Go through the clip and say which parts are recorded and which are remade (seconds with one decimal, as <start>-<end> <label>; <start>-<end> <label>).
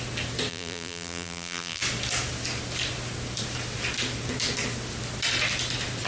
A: 0.0-0.5 recorded; 0.5-1.8 remade; 1.8-6.1 recorded